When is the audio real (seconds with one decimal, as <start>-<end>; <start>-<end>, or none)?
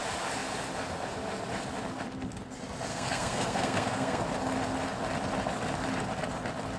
0.0-2.9; 4.2-6.8